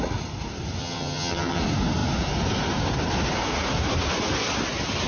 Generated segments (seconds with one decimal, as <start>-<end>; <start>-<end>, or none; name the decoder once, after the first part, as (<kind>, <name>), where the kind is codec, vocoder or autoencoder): 0.8-1.6 (vocoder, HiFi-GAN)